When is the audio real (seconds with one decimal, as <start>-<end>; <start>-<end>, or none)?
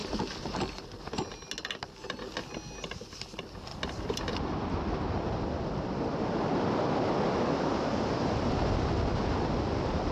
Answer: 0.0-10.1